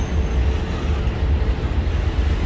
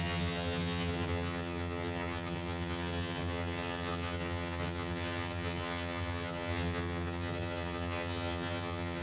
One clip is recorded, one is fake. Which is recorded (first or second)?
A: first